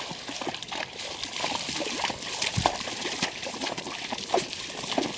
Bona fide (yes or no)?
yes